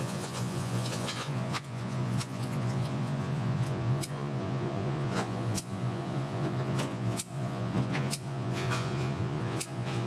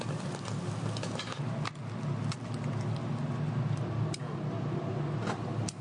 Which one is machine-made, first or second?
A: first